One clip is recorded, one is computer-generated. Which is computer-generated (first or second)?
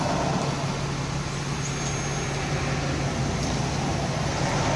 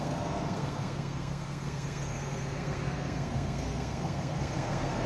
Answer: second